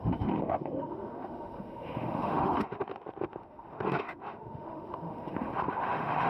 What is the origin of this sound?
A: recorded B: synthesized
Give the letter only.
B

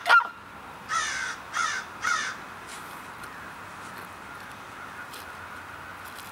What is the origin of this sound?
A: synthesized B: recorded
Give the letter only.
B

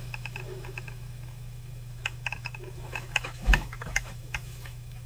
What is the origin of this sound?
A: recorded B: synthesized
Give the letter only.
B